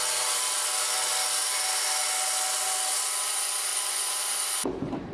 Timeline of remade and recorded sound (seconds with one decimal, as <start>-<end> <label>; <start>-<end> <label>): 0.0-3.7 recorded; 3.7-4.2 remade; 4.2-5.1 recorded